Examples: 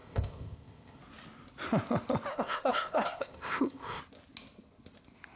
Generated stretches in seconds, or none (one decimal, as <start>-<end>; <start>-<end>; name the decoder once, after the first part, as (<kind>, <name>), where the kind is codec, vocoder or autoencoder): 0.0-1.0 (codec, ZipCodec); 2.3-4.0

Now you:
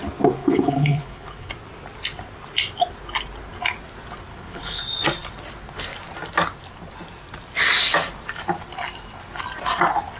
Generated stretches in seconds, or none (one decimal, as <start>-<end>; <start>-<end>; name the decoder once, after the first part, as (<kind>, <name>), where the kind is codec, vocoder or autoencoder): 0.4-1.5 (codec, HILCodec); 4.3-4.8

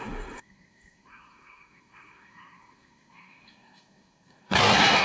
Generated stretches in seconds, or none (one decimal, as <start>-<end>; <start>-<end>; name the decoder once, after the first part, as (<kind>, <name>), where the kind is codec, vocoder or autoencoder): 0.0-5.0 (codec, SNAC)

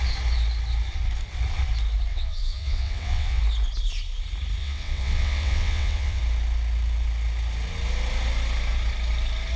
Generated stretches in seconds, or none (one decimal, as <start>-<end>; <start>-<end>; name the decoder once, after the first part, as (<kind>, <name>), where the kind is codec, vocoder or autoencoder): 2.1-3.4 (vocoder, WaveNeXt); 4.6-6.2

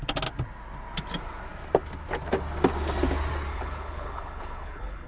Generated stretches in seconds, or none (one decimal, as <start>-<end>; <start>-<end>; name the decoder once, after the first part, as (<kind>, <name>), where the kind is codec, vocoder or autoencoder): 3.5-5.1 (codec, HILCodec)

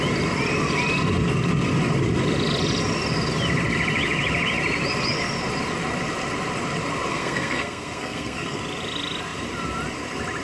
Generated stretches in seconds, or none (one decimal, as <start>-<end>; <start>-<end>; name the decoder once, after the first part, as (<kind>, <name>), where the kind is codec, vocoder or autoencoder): 7.1-8.6 (codec, SNAC)